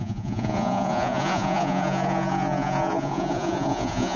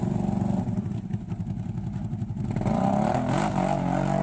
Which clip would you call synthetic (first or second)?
first